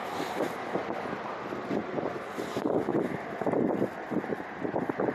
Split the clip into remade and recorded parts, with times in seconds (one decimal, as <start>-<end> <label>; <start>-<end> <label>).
0.0-5.1 recorded